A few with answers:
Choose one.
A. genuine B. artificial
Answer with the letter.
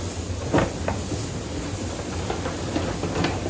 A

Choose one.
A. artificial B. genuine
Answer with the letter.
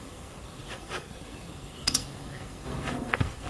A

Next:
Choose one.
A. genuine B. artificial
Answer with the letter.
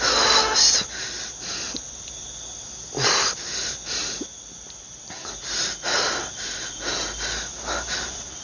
A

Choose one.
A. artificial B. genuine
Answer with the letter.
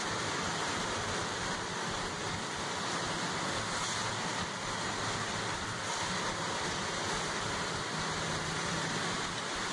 B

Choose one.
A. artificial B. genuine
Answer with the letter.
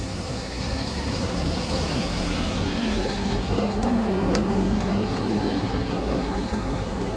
A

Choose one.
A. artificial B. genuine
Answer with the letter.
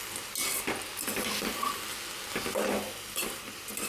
B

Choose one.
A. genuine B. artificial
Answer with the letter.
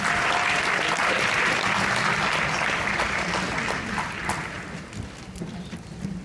A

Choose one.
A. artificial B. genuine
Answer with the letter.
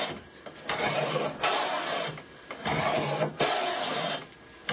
B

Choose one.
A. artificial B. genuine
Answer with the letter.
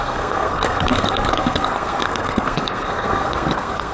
A